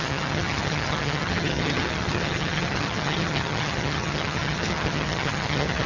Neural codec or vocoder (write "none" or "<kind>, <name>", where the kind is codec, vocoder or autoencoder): vocoder, HiFi-GAN